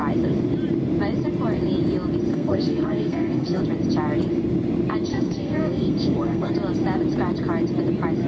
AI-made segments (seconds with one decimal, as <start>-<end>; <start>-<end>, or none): 2.3-3.6; 5.1-6.5